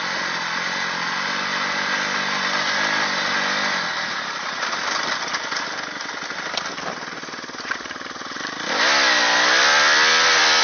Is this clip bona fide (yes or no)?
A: yes